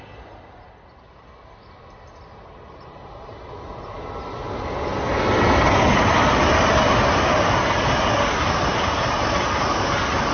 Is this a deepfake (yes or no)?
no